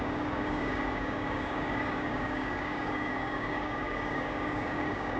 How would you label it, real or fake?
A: fake